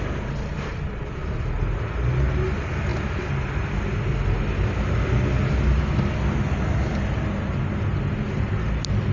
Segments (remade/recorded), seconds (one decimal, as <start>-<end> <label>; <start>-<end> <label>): 0.0-9.1 recorded